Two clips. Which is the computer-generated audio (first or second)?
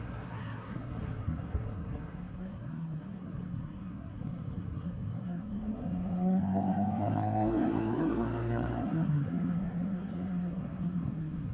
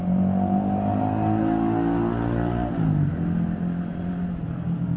first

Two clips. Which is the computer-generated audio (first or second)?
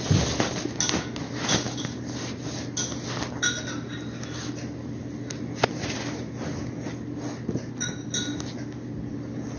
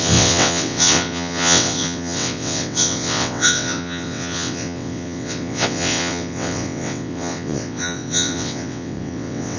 second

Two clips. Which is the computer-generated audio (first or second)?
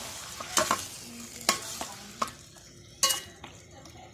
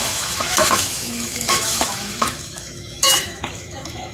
second